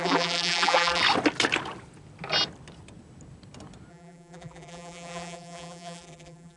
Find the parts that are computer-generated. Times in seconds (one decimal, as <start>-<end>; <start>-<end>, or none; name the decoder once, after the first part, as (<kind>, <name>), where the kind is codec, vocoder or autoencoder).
0.0-1.0 (vocoder, BigVGAN v2); 3.9-6.6